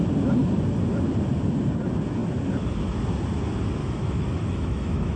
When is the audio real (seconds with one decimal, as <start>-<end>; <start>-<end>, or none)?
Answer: 0.0-3.8